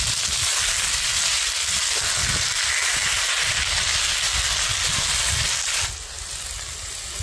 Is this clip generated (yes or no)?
no